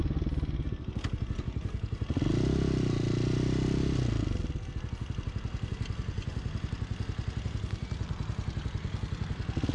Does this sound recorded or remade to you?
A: recorded